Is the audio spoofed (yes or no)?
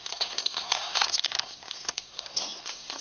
yes